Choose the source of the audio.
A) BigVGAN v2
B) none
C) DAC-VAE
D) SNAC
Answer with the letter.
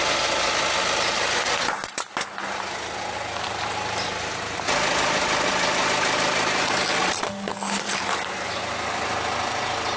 B